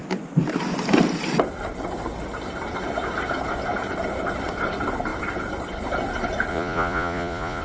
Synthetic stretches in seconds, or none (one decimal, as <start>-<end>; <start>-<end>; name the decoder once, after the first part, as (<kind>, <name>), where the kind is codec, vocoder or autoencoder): 6.5-7.6 (vocoder, Vocos)